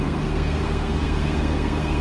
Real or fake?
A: fake